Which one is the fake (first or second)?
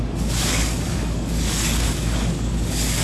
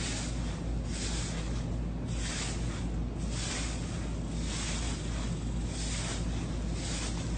first